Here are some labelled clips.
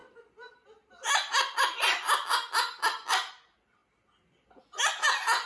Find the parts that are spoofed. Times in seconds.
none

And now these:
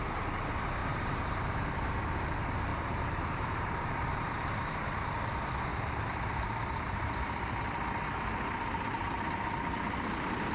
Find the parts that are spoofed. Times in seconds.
0.8-1.4 (vocoder, BigVGAN v2); 2.7-4.6; 5.7-7.6

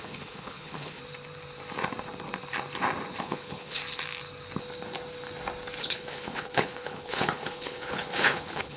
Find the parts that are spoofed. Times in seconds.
0.0-1.0 (codec, HILCodec); 3.2-3.8; 5.8-8.8

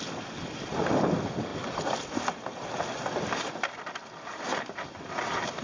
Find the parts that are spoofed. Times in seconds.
none

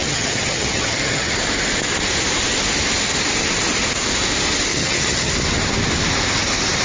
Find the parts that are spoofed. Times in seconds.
0.0-1.3 (vocoder, HiFi-GAN); 4.7-5.3

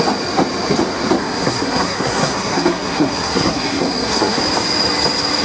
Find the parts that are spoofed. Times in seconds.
1.2-4.4 (codec, SNAC)

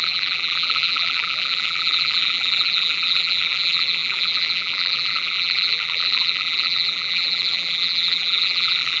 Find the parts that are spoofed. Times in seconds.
0.0-9.0 (vocoder, BigVGAN v2)